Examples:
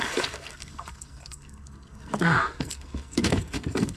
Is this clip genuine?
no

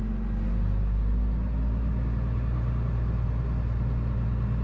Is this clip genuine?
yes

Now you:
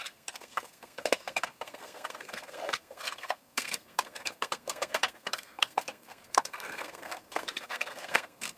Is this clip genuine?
no